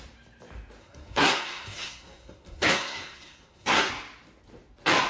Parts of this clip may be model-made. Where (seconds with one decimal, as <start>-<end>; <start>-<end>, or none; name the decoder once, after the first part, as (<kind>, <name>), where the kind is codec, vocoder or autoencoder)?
0.8-3.9 (codec, SNAC)